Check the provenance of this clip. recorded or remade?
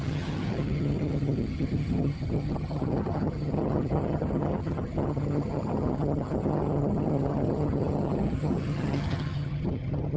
remade